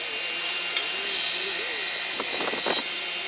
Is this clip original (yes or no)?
yes